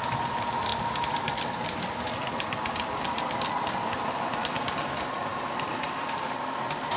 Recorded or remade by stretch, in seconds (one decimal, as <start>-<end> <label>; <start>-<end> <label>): 0.0-7.0 recorded